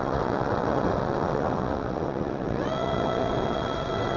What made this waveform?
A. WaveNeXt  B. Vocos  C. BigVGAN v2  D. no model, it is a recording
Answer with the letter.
A